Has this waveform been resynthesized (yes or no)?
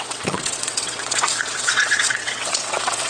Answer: yes